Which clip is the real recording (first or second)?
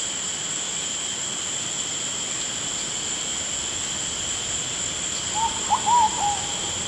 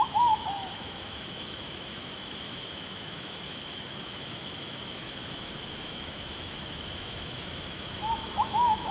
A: first